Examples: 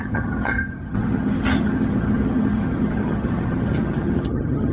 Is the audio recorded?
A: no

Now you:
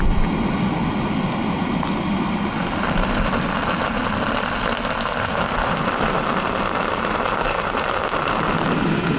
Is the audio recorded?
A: yes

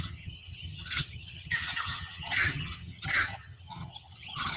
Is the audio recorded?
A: no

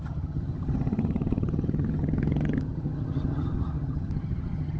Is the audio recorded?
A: no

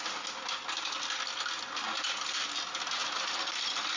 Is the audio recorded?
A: yes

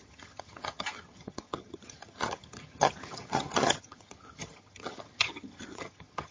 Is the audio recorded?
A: no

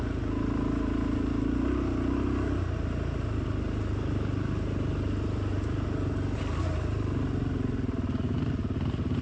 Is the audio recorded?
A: yes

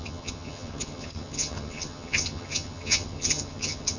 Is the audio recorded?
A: no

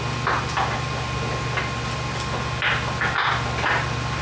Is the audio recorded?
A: yes